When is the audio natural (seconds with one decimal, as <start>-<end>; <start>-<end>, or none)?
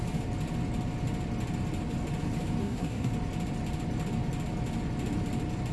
0.0-2.6; 3.1-5.7